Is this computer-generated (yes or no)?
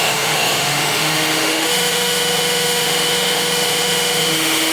yes